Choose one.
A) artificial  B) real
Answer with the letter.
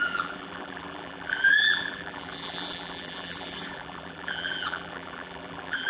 A